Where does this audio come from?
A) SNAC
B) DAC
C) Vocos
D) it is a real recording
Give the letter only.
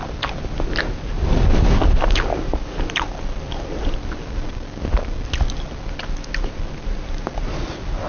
D